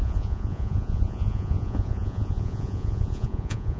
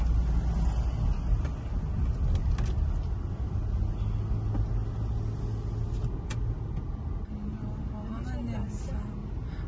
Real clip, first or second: second